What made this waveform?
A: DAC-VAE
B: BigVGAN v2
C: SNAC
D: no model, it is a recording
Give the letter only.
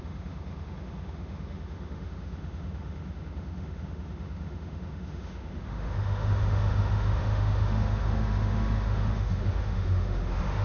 A